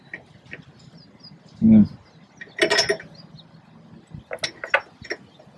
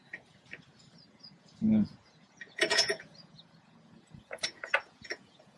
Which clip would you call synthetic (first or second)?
second